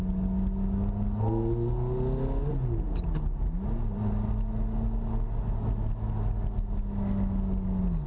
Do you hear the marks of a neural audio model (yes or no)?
no